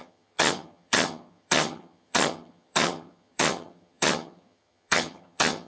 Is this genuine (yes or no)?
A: no